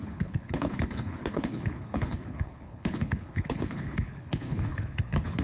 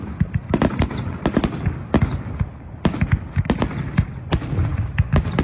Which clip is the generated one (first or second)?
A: first